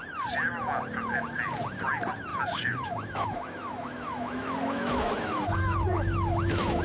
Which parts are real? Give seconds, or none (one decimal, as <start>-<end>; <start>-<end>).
0.0-2.3